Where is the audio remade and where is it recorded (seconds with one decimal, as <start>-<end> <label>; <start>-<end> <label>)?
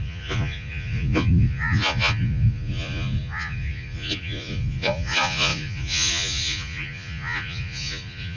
0.0-8.4 remade